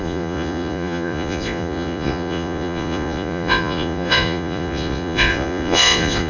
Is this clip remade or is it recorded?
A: remade